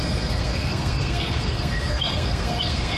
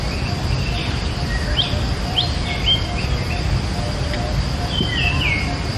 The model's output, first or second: first